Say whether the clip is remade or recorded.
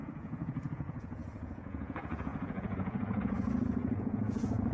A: remade